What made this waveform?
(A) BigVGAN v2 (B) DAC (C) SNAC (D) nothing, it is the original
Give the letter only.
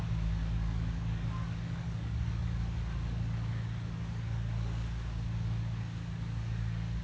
B